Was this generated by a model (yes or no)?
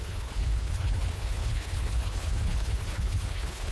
yes